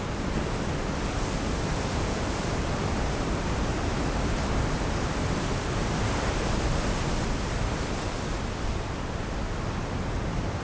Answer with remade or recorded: recorded